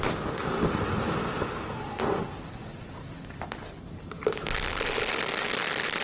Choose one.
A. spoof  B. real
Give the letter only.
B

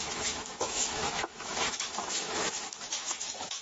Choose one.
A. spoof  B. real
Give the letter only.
A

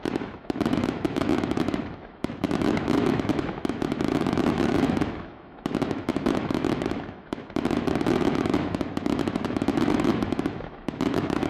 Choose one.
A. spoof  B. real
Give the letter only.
A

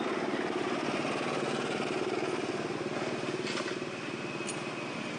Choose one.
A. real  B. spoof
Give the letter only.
A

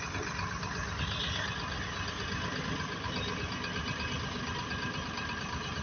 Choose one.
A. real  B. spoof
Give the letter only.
A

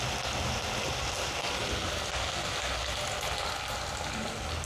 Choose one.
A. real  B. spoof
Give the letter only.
A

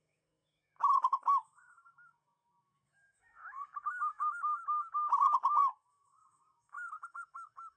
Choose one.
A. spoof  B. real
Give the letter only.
A